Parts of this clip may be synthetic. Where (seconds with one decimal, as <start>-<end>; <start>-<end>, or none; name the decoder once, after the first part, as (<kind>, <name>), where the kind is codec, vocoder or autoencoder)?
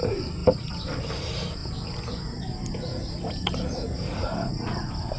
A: none